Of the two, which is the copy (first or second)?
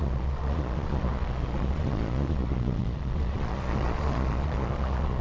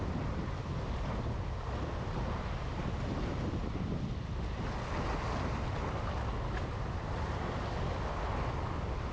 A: first